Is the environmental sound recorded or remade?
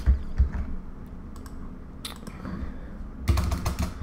recorded